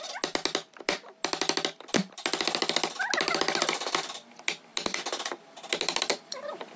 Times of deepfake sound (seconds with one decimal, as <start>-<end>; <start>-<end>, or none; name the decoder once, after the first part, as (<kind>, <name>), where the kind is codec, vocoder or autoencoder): none